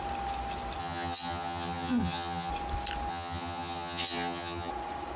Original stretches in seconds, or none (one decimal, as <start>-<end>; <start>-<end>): 0.0-0.8; 2.5-3.1; 4.7-5.2